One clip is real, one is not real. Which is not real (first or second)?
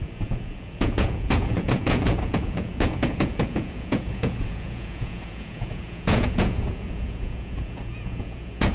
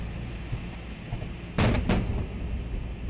first